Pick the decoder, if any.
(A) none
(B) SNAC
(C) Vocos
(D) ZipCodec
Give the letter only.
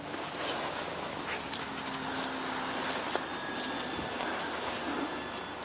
A